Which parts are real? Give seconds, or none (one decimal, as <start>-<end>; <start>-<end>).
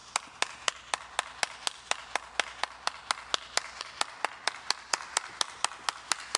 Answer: 0.0-6.4